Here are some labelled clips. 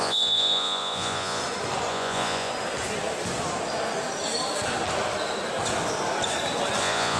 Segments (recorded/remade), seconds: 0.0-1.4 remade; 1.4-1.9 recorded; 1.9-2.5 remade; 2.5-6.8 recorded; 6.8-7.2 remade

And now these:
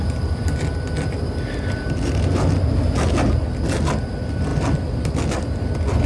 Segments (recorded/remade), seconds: 0.0-6.1 recorded

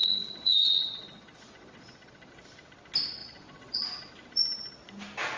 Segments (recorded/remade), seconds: 0.0-2.3 remade; 2.3-3.2 recorded; 3.2-4.1 remade; 4.1-5.4 recorded

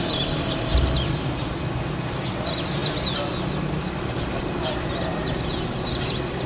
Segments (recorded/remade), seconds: 0.0-6.5 recorded

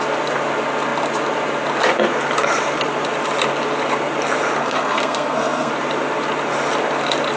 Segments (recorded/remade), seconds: 0.0-4.6 recorded; 4.6-5.7 remade; 5.7-7.4 recorded

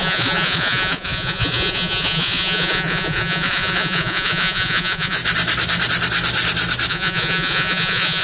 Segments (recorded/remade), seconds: 0.0-5.2 remade; 5.2-6.9 recorded; 6.9-8.2 remade

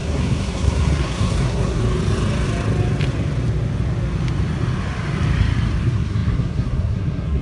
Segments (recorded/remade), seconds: 0.0-1.8 remade; 1.8-5.8 recorded; 5.8-7.4 remade

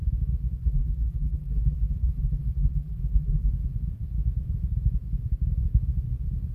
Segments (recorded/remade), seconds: 0.0-0.6 recorded; 0.6-3.5 remade; 3.5-6.5 recorded